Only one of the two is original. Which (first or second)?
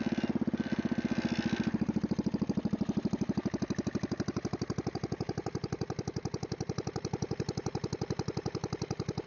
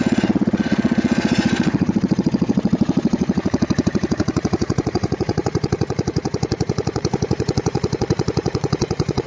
first